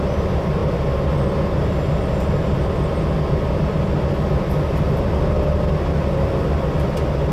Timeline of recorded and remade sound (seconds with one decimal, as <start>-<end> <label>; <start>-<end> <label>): 0.0-7.3 recorded